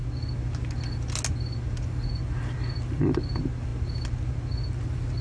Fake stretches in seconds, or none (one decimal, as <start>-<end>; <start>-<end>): none